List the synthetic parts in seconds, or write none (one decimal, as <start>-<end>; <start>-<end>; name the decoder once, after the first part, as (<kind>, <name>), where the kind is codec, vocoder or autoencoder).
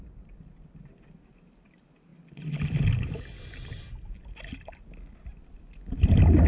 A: none